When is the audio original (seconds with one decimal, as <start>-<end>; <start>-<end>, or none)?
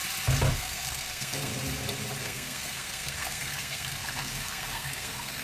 0.0-0.5; 1.5-2.2